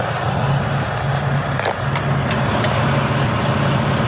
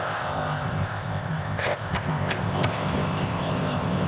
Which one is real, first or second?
first